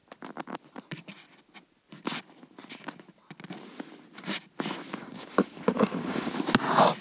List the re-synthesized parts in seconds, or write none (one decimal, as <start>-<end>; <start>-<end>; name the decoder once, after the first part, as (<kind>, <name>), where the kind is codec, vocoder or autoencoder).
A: 5.0-6.3 (codec, DAC)